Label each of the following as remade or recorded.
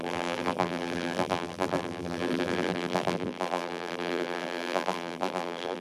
remade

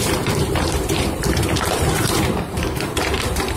remade